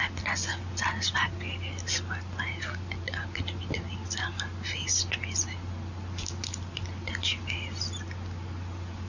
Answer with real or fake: real